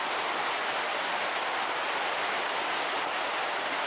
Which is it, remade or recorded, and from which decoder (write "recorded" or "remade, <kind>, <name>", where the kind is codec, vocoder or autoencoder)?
recorded